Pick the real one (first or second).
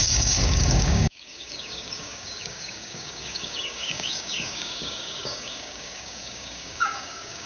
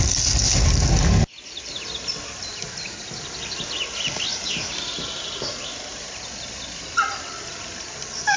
second